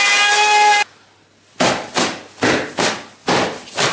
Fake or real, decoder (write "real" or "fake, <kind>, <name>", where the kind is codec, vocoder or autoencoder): real